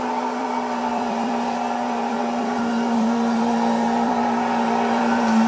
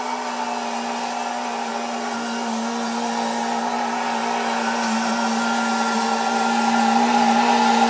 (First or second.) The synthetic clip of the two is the first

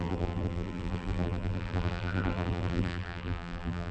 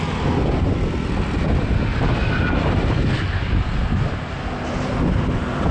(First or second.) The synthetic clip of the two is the first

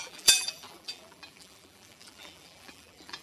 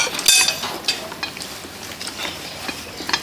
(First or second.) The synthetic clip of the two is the first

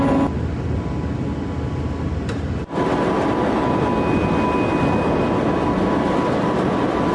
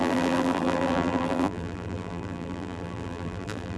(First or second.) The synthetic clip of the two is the second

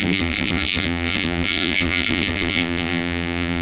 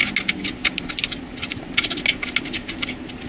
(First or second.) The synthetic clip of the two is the first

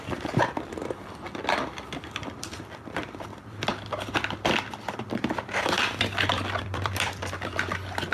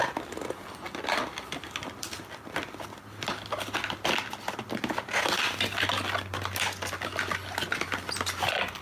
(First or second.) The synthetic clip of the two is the first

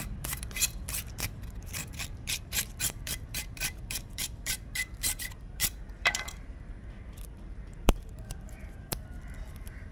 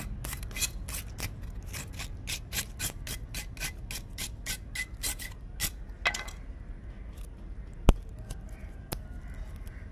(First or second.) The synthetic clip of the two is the first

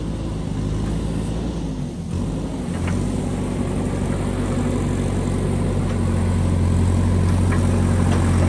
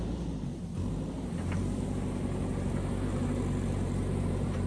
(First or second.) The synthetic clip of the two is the second